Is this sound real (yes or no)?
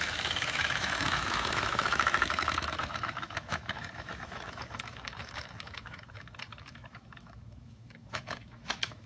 no